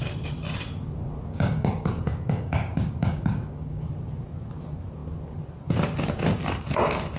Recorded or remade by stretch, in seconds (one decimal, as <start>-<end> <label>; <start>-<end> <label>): 0.0-1.3 recorded; 1.3-3.9 remade; 3.9-7.2 recorded